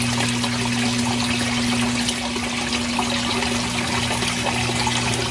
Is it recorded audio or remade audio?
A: recorded